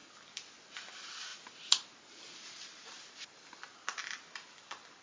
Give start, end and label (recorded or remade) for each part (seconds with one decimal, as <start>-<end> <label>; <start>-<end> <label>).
0.0-5.0 recorded